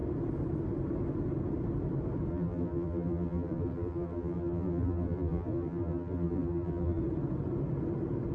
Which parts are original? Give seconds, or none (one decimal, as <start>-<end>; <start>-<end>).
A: 0.0-2.3; 7.0-8.3